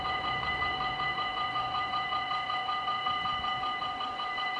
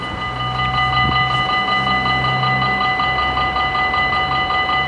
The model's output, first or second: first